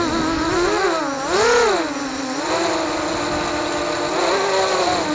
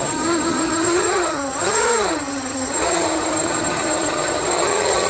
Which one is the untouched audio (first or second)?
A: first